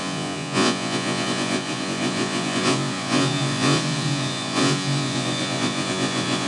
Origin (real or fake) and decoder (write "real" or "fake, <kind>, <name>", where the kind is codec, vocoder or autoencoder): fake, vocoder, Vocos